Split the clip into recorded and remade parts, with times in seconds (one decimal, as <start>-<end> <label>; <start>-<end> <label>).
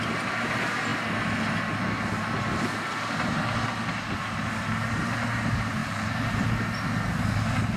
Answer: 0.0-5.8 recorded; 5.8-6.4 remade; 6.4-7.8 recorded